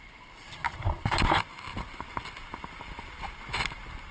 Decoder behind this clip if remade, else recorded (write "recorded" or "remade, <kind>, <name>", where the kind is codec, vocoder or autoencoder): recorded